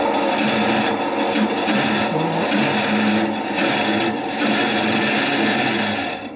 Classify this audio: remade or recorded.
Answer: remade